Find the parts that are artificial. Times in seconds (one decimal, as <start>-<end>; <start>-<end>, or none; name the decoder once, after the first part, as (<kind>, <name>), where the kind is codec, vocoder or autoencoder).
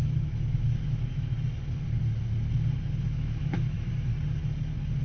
0.0-1.3 (autoencoder, DAC-VAE); 2.8-4.1